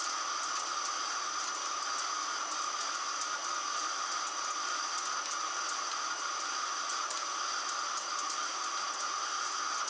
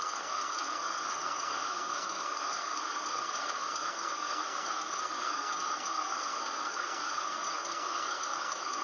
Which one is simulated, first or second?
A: second